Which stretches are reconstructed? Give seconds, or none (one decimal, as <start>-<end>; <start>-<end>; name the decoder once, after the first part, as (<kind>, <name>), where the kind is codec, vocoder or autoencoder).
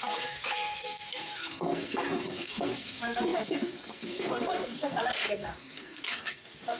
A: 0.0-6.8 (codec, SNAC)